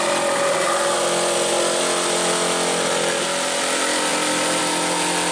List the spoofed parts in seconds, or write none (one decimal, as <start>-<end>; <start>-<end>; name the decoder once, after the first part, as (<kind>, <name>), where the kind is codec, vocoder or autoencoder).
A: none